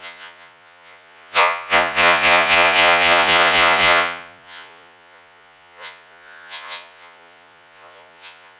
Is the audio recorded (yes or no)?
no